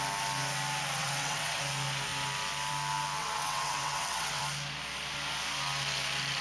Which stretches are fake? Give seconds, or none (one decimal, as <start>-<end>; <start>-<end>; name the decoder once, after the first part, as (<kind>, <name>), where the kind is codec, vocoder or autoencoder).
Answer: 1.0-1.6 (vocoder, WaveNeXt); 3.2-4.4